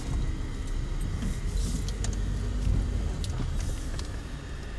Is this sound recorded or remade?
recorded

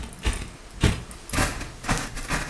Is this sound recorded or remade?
recorded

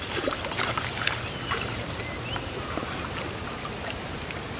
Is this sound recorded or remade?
remade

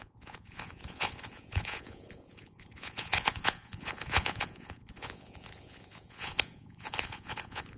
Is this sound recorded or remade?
remade